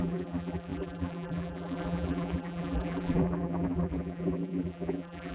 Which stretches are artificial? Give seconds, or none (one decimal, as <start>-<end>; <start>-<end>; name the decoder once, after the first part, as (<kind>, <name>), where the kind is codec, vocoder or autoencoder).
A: 0.0-5.3 (vocoder, BigVGAN v2)